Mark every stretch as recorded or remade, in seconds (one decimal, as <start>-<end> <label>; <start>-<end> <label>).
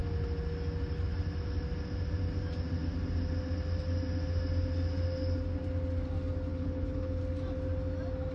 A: 0.0-6.5 recorded; 6.5-7.2 remade; 7.2-8.3 recorded